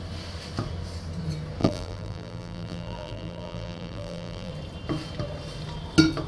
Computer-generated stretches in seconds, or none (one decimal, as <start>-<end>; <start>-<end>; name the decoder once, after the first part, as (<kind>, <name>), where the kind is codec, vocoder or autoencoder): 1.6-4.5 (vocoder, BigVGAN v2)